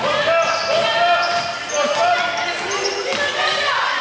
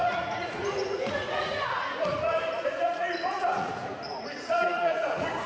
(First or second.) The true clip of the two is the first